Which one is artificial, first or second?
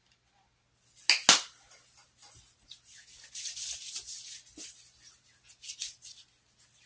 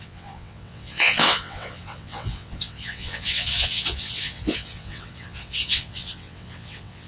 second